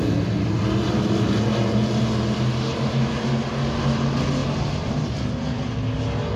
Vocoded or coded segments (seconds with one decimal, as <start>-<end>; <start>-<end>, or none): 2.7-3.2; 4.4-5.1